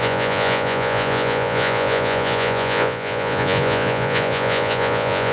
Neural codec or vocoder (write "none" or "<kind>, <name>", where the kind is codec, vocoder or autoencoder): vocoder, Vocos